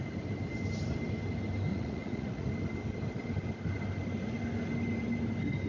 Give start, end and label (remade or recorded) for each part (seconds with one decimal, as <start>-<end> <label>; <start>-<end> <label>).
0.0-1.7 recorded; 1.7-2.5 remade; 2.5-5.7 recorded